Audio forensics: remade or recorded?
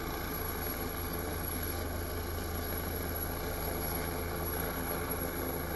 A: recorded